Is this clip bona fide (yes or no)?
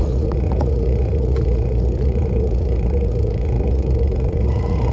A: no